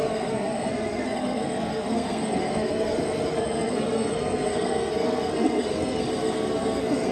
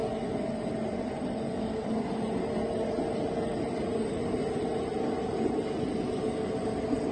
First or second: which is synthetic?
first